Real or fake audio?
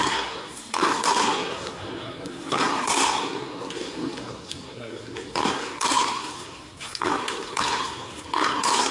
fake